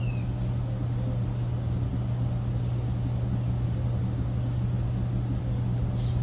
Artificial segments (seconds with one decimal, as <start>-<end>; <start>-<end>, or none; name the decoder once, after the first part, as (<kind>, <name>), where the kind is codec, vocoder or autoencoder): none